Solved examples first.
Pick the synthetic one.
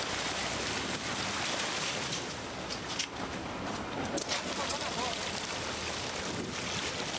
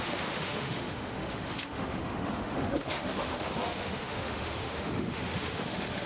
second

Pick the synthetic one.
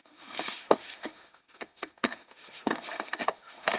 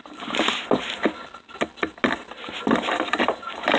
first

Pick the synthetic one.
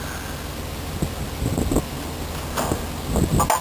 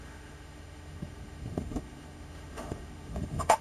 second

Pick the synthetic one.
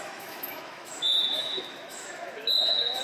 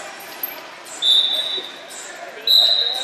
first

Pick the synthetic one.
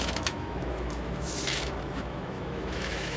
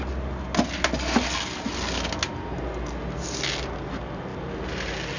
first